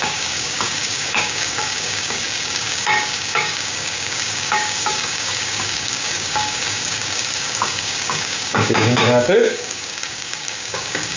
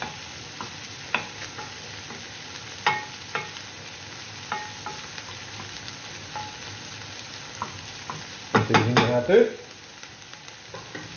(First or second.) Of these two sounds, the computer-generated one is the first